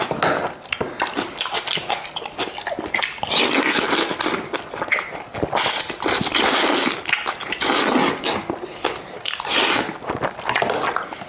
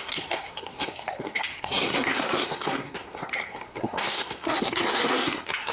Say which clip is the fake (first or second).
second